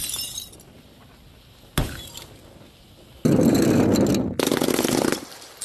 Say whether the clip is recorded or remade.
recorded